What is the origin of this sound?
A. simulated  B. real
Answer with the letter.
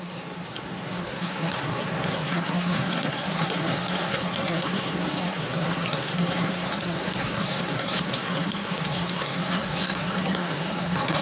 A